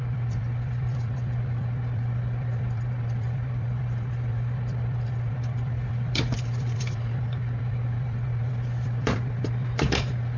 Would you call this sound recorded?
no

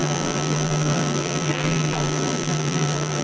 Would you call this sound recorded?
no